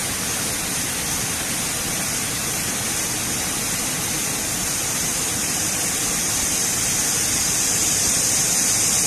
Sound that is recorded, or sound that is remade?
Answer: recorded